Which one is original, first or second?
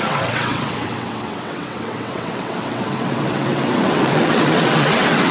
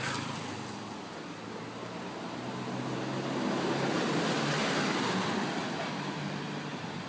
second